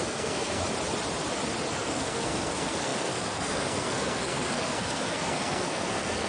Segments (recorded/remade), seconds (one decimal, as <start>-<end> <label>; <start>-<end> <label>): 0.0-0.6 remade; 0.6-1.7 recorded; 1.7-6.3 remade